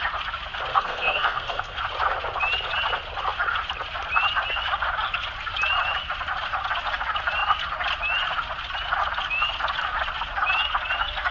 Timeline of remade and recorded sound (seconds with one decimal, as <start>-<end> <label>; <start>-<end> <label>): 0.0-0.7 recorded; 0.7-1.8 remade; 1.8-11.3 recorded